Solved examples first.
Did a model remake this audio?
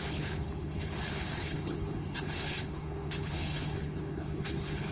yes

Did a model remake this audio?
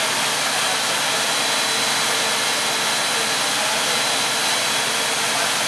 no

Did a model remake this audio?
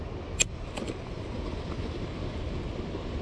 no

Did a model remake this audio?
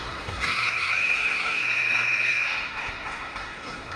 yes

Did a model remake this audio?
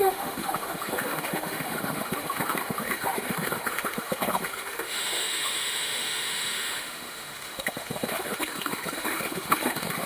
yes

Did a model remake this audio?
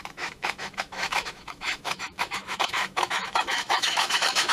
yes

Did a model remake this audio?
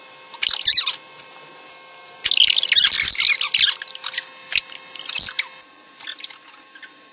no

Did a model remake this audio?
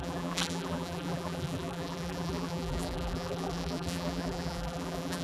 yes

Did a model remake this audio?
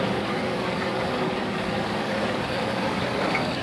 yes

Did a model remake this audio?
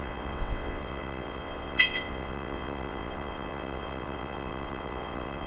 yes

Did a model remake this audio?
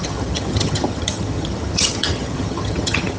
yes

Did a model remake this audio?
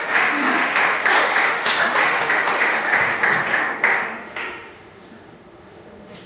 yes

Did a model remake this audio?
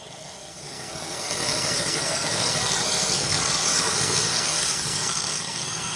yes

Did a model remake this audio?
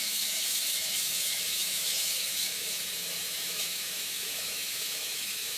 yes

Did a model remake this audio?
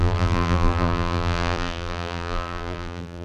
yes